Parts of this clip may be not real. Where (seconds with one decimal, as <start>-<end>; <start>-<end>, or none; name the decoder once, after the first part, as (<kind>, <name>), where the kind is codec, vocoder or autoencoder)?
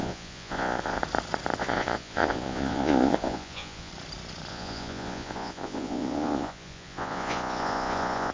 0.0-1.0 (vocoder, Vocos); 1.6-3.9; 4.5-8.3